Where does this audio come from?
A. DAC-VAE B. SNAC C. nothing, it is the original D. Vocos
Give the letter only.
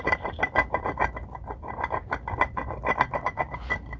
C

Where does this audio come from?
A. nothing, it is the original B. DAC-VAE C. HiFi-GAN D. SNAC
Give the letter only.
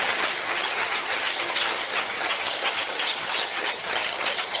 C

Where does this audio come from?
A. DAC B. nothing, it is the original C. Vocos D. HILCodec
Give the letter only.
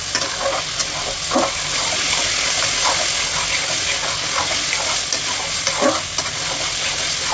B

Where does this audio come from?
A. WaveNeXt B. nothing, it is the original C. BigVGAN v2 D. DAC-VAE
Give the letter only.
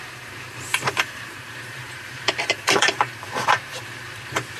C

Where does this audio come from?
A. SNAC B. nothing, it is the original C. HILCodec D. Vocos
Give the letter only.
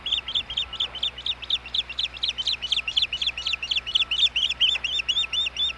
B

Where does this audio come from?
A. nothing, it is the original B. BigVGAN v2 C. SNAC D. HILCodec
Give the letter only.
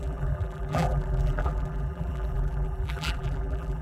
B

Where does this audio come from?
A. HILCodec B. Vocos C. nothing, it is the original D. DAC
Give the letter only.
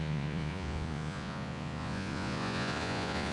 B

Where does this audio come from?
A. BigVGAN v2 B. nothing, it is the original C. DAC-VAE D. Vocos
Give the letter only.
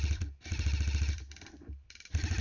A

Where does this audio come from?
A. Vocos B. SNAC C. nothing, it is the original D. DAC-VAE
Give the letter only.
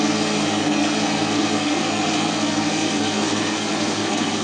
B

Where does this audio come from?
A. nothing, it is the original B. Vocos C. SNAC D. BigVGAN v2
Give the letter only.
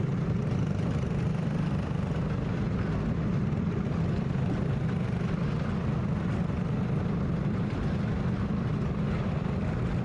A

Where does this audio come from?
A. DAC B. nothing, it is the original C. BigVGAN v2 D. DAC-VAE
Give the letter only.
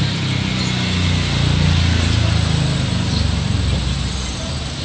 B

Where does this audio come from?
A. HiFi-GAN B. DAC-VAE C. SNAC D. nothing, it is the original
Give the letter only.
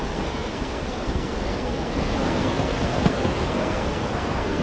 C